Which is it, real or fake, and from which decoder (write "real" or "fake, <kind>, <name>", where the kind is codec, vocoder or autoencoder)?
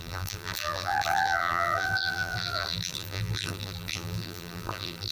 fake, vocoder, BigVGAN v2